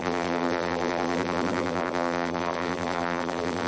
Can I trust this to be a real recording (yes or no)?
no